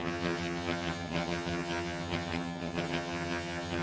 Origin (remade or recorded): remade